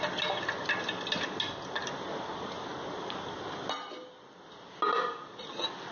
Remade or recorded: recorded